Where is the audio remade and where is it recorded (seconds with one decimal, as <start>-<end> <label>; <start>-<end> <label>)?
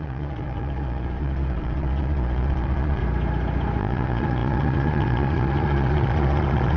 0.0-3.0 remade; 3.0-3.8 recorded; 3.8-6.8 remade